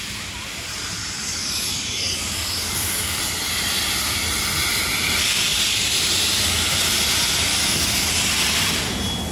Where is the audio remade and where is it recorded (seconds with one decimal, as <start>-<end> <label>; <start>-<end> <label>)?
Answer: 0.0-1.0 recorded; 1.0-3.2 remade; 3.2-7.5 recorded; 7.5-8.1 remade; 8.1-9.3 recorded